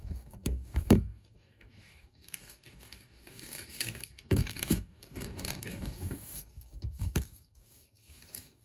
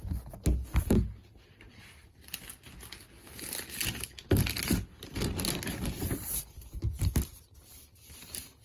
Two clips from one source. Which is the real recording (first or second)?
second